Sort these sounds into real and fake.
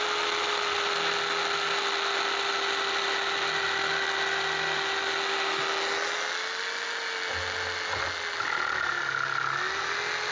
real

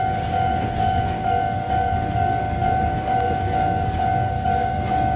fake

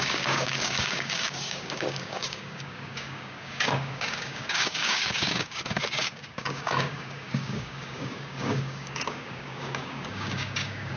fake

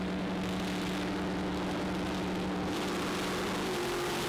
real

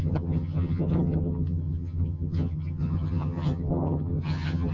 fake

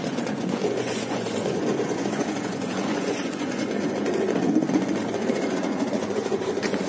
fake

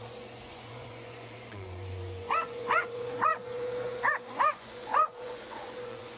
fake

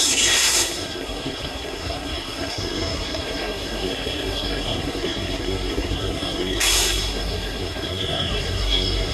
fake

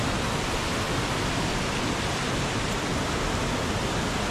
real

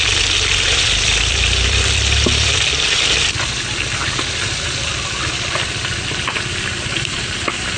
fake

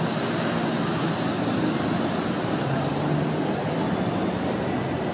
real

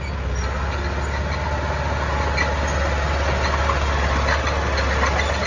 real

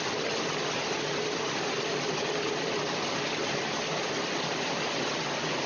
real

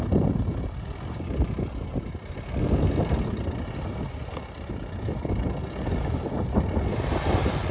real